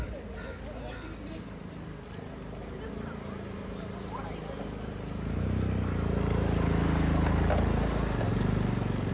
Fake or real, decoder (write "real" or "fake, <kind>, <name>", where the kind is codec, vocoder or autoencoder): real